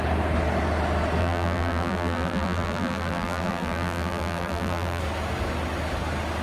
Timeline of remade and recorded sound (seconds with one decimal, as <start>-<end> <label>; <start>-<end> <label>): 0.0-1.2 recorded; 1.2-5.0 remade; 5.0-6.4 recorded